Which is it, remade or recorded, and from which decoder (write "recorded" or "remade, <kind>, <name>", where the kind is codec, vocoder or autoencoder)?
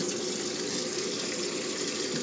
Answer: recorded